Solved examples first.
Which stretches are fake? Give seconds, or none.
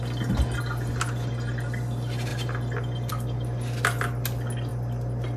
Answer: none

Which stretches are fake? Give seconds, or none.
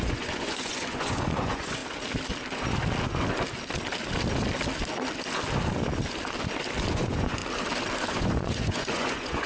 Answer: 0.0-1.8 (vocoder, Vocos); 6.9-7.4; 8.1-9.5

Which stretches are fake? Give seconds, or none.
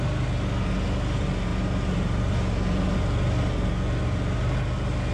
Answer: none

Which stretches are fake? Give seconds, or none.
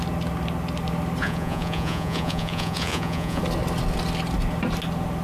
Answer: 1.2-3.4 (vocoder, Vocos)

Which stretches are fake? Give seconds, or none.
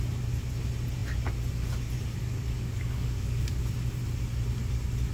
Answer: 2.2-3.6 (codec, DAC)